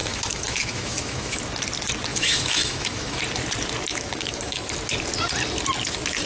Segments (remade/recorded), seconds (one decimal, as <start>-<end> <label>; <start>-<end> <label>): 0.0-1.4 remade; 1.4-2.1 recorded; 2.1-3.2 remade; 3.2-3.9 recorded; 3.9-4.7 remade; 4.7-6.3 recorded